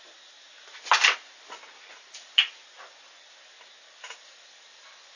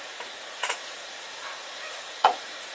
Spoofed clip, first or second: second